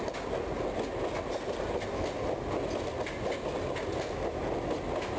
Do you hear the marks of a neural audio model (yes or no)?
no